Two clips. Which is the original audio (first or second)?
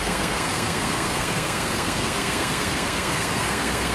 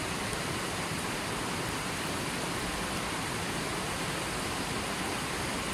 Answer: second